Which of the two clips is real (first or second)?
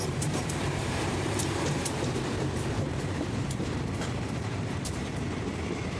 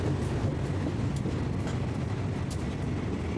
second